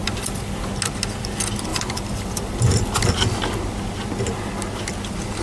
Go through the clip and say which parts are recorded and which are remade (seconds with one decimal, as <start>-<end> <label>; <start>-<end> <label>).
0.0-0.7 remade; 0.7-1.7 recorded; 1.7-3.1 remade; 3.1-5.4 recorded